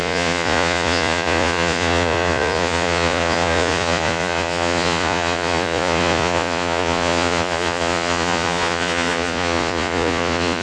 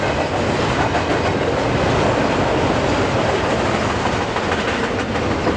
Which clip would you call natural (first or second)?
second